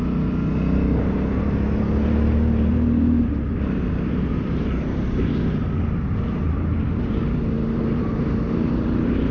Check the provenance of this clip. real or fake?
real